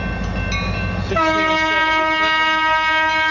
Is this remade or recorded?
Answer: recorded